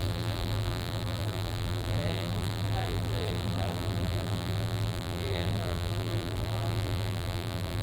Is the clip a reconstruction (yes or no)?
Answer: yes